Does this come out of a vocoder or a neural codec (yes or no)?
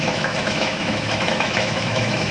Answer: yes